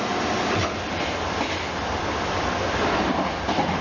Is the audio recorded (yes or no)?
yes